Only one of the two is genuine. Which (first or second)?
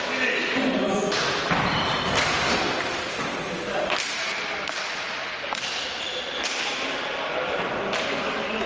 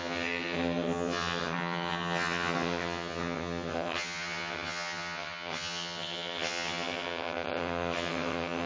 first